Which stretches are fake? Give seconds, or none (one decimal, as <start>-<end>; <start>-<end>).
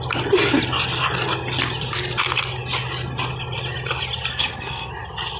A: 4.3-4.9